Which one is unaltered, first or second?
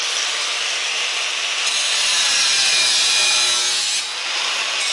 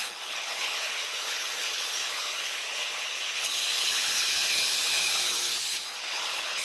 first